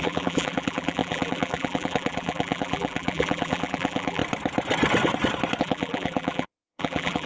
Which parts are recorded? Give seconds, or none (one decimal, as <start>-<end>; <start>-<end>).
4.2-5.6

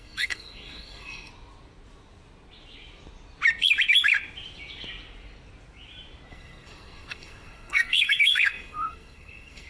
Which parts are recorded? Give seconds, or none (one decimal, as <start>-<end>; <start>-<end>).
1.3-6.3

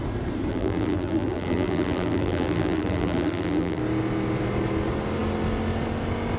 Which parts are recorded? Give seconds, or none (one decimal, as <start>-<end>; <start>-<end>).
0.0-0.5; 3.8-6.4

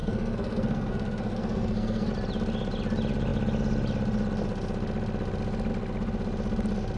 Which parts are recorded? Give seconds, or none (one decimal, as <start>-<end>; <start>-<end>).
2.1-7.0